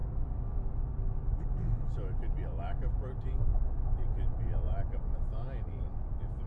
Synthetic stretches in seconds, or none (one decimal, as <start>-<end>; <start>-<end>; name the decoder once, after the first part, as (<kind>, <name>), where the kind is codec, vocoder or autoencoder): none